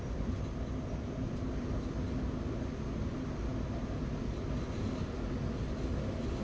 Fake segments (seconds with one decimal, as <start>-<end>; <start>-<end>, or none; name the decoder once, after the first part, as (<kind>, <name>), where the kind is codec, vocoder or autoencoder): none